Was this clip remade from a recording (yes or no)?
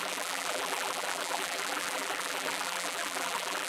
yes